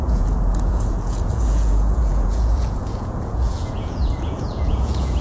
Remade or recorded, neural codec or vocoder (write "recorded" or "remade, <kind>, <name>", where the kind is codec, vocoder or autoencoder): remade, vocoder, Vocos